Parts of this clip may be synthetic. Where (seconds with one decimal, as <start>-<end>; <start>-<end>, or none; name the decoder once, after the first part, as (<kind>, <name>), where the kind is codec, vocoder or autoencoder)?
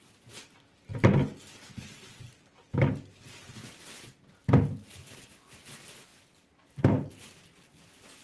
none